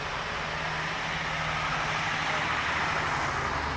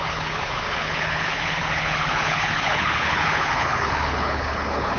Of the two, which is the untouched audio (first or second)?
first